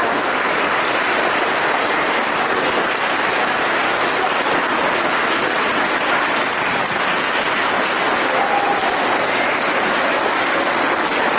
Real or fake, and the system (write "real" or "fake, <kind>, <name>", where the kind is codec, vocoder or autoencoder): real